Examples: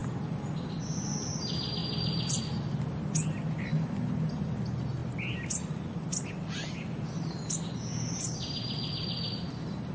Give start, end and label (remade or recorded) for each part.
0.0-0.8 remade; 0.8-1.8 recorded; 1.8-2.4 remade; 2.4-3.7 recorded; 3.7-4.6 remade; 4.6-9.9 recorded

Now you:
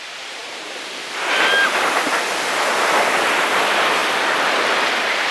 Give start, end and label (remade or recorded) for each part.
0.0-0.4 remade; 0.4-3.4 recorded; 3.4-5.3 remade

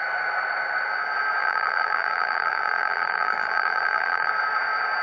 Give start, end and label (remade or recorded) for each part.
0.0-1.4 recorded; 1.4-4.3 remade; 4.3-5.0 recorded